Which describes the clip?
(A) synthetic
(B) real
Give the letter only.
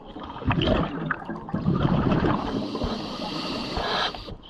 A